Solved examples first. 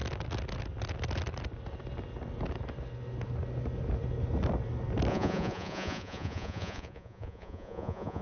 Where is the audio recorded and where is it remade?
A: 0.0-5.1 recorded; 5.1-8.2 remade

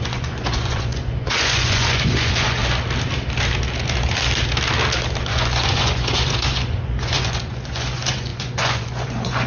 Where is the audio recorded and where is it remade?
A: 0.0-2.6 remade; 2.6-5.3 recorded; 5.3-9.5 remade